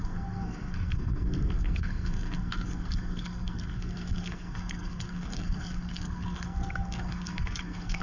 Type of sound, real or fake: fake